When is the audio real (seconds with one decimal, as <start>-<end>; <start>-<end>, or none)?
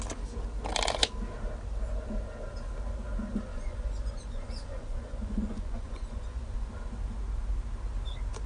0.0-3.5; 6.7-8.5